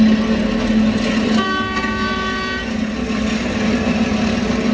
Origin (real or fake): real